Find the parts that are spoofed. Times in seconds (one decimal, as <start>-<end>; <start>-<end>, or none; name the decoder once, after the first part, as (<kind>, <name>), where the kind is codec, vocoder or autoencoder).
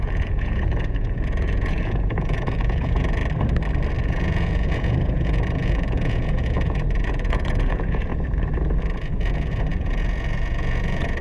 0.0-3.2 (vocoder, Vocos); 4.0-8.1; 8.8-11.2